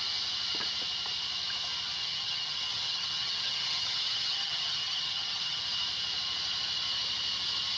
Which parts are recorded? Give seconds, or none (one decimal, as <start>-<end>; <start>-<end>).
0.0-2.0; 5.6-7.8